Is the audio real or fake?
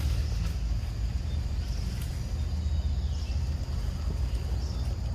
real